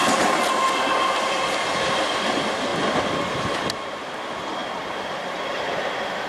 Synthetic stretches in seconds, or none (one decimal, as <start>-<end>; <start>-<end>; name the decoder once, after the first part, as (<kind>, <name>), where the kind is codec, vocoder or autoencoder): none